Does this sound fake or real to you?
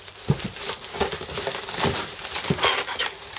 real